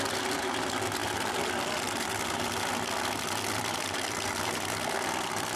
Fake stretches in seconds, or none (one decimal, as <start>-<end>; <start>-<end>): 0.0-5.6